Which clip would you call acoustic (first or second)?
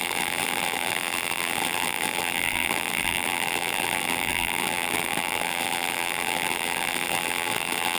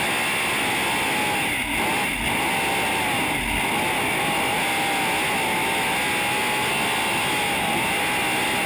second